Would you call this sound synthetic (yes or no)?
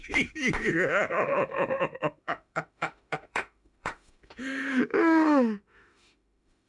yes